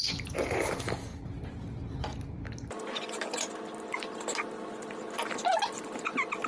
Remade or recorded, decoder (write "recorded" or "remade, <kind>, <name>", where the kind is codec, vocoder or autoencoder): recorded